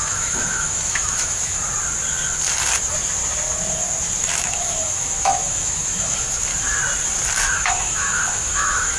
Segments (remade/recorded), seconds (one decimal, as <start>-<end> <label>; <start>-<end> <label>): 0.0-1.6 remade; 1.6-4.2 recorded; 4.2-6.5 remade; 6.5-7.4 recorded; 7.4-9.0 remade